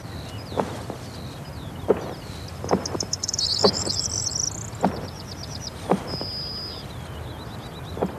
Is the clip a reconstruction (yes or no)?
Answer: yes